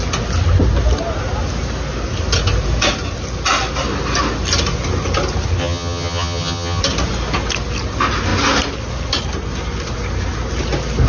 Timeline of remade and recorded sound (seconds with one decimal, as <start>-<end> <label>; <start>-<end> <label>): 0.0-5.6 recorded; 5.6-6.8 remade; 6.8-11.1 recorded